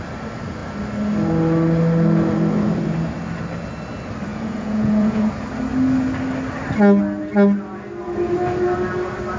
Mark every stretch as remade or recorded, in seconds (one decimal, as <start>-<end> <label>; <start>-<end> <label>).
0.0-4.3 recorded; 4.3-5.3 remade; 5.3-9.4 recorded